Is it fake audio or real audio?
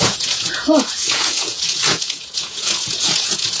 fake